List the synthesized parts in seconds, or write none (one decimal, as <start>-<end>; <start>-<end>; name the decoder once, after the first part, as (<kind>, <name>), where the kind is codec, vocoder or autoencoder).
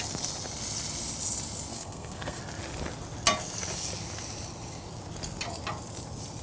1.7-2.4 (codec, SNAC)